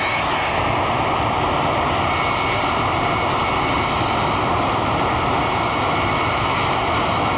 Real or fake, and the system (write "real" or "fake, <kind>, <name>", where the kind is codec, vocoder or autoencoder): real